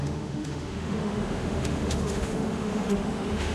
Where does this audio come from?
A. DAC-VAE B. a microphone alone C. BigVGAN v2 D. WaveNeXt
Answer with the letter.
A